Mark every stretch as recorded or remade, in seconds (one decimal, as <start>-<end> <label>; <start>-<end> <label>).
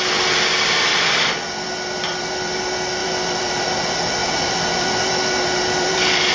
0.0-0.9 recorded; 0.9-2.6 remade; 2.6-3.0 recorded; 3.0-3.8 remade; 3.8-4.2 recorded; 4.2-6.3 remade